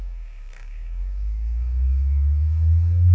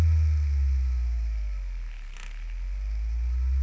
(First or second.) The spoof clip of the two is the first